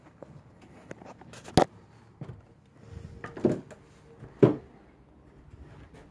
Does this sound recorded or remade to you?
recorded